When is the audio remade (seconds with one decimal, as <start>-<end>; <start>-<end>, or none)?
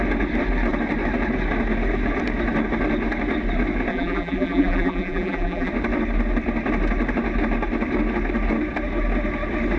3.9-5.7